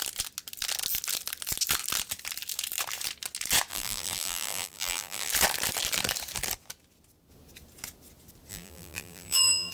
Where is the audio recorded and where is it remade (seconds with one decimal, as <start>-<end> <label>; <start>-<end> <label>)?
0.0-3.7 recorded; 3.7-5.3 remade; 5.3-8.5 recorded; 8.5-9.7 remade